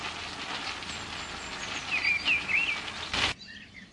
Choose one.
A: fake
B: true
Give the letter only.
B